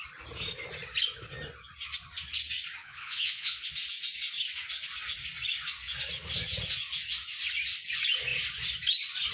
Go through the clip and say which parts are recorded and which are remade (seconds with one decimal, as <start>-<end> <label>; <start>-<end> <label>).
0.0-2.8 recorded; 2.8-3.7 remade; 3.7-9.3 recorded